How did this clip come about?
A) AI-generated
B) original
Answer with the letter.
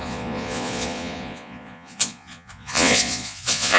A